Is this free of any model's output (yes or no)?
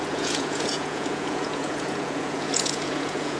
no